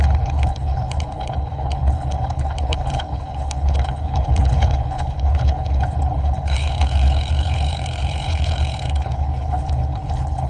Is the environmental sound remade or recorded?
remade